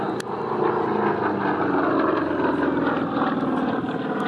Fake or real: real